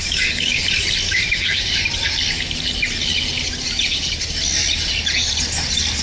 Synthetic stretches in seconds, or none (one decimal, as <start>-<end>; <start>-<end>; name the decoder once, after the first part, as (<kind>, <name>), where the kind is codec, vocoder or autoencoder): 0.0-0.6 (autoencoder, DAC-VAE); 1.1-1.6